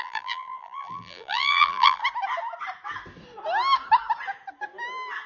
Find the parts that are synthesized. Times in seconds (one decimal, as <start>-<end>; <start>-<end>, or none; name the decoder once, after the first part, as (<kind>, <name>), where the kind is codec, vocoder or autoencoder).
0.0-2.0 (vocoder, BigVGAN v2)